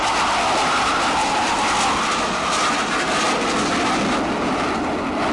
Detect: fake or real real